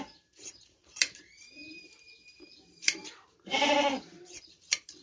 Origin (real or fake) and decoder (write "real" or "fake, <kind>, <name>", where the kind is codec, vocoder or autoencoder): fake, vocoder, BigVGAN v2